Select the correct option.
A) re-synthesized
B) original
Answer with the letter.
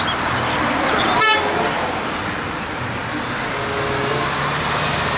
B